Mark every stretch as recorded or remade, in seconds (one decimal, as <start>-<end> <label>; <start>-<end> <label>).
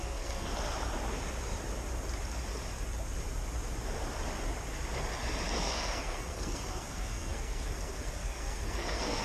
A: 0.0-0.5 remade; 0.5-5.6 recorded; 5.6-9.2 remade